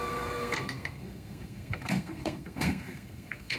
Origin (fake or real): fake